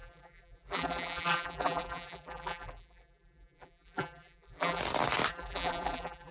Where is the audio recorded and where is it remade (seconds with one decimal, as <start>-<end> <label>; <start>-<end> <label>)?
0.0-4.8 remade; 4.8-5.3 recorded; 5.3-6.3 remade